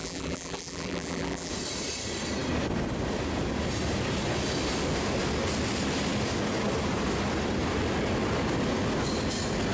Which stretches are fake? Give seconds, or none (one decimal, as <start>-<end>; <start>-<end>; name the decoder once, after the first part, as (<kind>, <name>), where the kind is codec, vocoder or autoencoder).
0.0-1.5 (vocoder, BigVGAN v2)